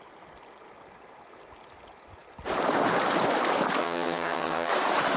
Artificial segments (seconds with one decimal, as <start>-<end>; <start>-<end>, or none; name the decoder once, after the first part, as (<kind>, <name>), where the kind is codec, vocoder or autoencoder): 3.8-4.7 (vocoder, HiFi-GAN)